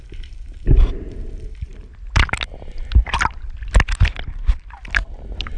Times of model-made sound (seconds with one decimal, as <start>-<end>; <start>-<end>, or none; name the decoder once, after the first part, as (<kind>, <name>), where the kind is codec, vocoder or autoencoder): none